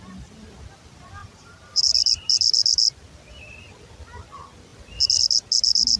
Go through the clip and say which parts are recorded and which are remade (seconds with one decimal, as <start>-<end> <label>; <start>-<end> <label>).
0.0-1.2 recorded; 1.2-1.8 remade; 1.8-6.0 recorded